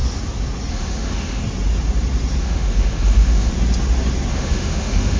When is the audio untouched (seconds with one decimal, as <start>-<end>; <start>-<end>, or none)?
0.0-0.7; 1.4-2.4; 3.5-4.3